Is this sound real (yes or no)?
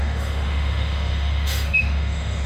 no